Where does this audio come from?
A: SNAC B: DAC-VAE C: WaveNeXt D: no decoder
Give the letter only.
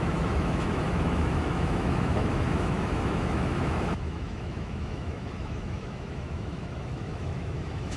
B